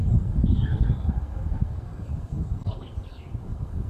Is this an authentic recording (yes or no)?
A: no